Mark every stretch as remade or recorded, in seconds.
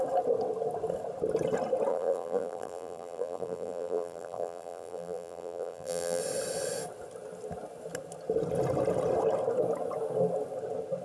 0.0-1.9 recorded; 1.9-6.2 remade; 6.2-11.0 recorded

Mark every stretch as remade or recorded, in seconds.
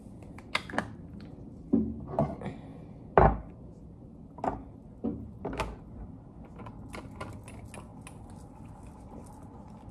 0.0-9.9 recorded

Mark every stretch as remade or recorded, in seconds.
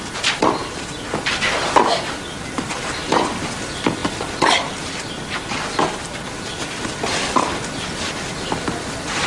0.0-0.6 remade; 0.6-2.8 recorded; 2.8-9.3 remade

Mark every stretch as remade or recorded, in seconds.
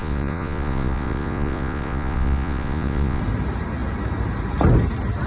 0.0-3.2 remade; 3.2-5.3 recorded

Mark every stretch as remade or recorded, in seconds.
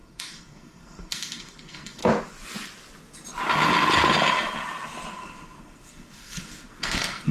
0.0-2.0 remade; 2.0-5.1 recorded; 5.1-7.3 remade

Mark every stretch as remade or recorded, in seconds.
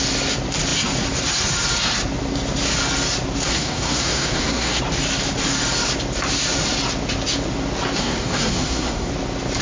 0.0-3.5 recorded; 3.5-4.8 remade; 4.8-8.0 recorded; 8.0-9.1 remade; 9.1-9.6 recorded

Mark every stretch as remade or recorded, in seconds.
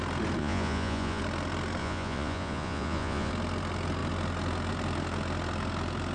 0.0-0.4 recorded; 0.4-1.2 remade; 1.2-1.8 recorded; 1.8-3.3 remade; 3.3-6.1 recorded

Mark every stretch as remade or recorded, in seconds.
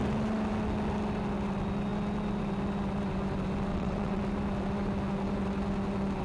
0.0-3.7 recorded; 3.7-4.2 remade; 4.2-6.2 recorded